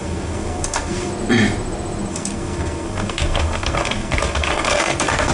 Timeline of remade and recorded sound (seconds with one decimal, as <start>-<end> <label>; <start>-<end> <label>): 0.0-1.1 remade; 1.1-2.1 recorded; 2.1-5.3 remade